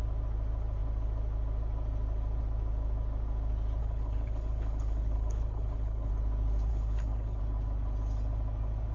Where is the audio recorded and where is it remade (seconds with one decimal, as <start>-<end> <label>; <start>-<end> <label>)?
0.0-3.8 recorded; 3.8-6.1 remade; 6.1-6.7 recorded; 6.7-7.4 remade; 7.4-8.9 recorded